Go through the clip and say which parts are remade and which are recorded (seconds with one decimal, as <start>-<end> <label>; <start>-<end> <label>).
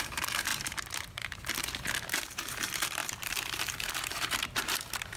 0.0-5.2 remade